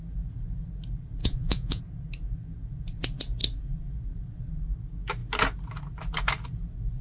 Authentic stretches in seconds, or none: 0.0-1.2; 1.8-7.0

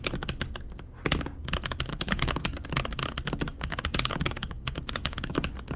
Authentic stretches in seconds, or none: 0.0-1.9; 2.7-3.5; 5.3-5.8

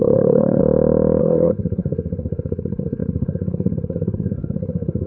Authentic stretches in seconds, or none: 0.6-1.2